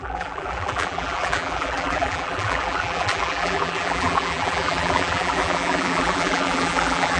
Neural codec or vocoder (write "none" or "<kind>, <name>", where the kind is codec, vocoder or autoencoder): vocoder, BigVGAN v2